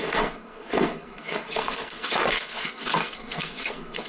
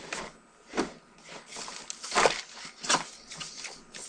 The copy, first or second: first